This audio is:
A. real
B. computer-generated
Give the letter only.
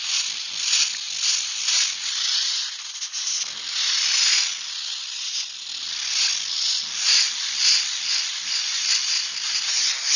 A